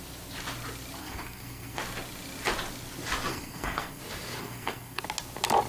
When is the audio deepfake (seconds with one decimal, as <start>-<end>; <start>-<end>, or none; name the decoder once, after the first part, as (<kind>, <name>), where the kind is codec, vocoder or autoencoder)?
1.0-1.8 (codec, SNAC); 3.3-4.0; 4.4-5.0